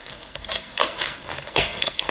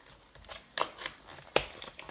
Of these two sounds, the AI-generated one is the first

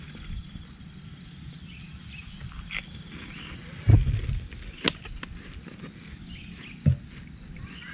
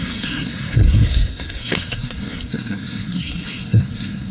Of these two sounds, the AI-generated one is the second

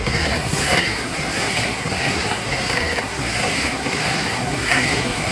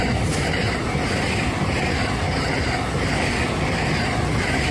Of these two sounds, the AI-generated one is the first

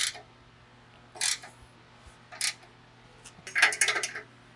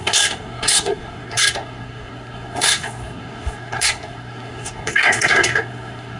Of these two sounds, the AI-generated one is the second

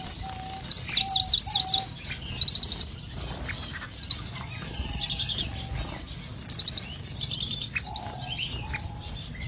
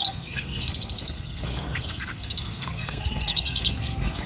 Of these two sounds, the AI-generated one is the second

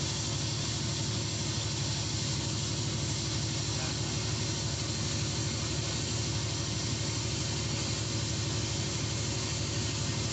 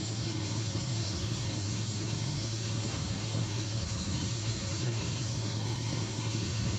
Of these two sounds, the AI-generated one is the second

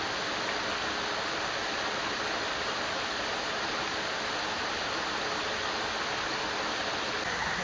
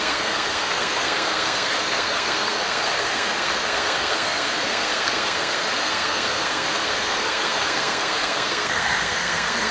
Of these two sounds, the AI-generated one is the second